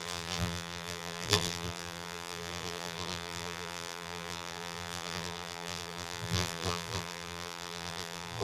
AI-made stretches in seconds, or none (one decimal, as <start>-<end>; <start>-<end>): 0.0-8.4